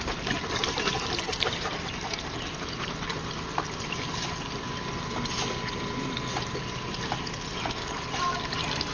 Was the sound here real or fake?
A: fake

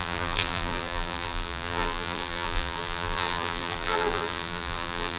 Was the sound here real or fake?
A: fake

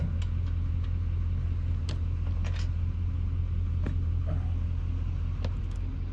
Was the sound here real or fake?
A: real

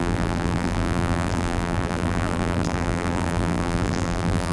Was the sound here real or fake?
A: fake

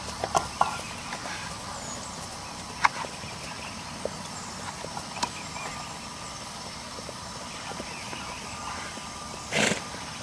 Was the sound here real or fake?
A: fake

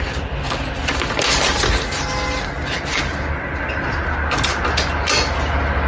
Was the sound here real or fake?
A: real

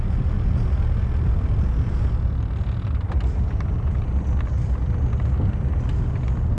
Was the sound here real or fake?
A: real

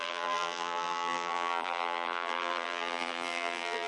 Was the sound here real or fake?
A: fake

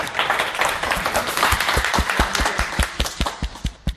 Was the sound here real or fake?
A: fake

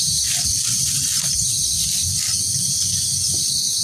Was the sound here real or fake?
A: real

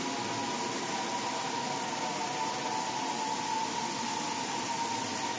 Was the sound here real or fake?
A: real